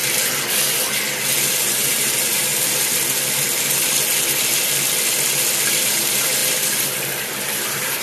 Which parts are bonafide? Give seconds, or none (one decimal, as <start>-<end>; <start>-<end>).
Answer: 0.0-1.5; 2.5-5.7; 6.4-7.2